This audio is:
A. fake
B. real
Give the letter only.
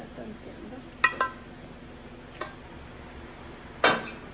B